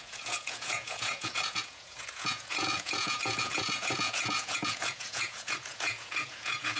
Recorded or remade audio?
remade